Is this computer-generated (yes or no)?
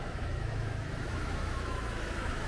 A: yes